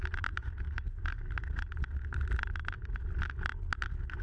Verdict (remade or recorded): recorded